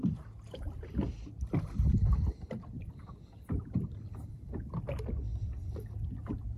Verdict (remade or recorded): recorded